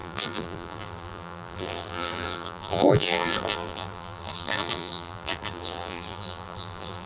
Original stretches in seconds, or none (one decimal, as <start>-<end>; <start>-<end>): none